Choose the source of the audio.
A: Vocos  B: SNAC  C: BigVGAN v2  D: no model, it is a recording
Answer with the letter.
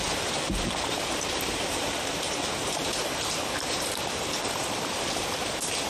C